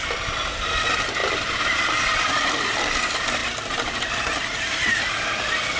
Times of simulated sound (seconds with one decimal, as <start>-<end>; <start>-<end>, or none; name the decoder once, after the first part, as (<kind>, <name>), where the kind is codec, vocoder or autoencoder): 1.2-2.3 (vocoder, BigVGAN v2)